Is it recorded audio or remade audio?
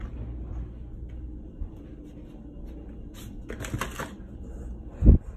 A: recorded